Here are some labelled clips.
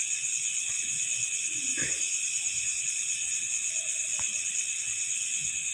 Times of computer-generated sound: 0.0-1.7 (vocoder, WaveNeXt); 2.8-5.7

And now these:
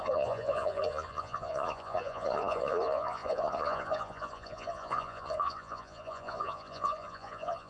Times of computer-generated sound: 0.0-7.7 (vocoder, Vocos)

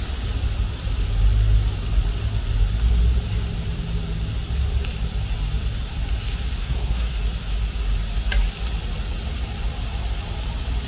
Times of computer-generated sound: 6.6-7.2 (codec, SNAC)